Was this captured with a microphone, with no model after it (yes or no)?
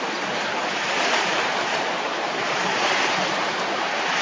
no